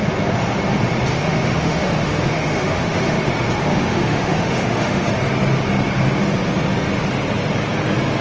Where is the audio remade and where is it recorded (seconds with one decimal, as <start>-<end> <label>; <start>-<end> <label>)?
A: 0.0-1.1 recorded; 1.1-3.3 remade; 3.3-3.7 recorded; 3.7-5.1 remade; 5.1-8.2 recorded